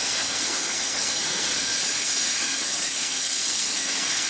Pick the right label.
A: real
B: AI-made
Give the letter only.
B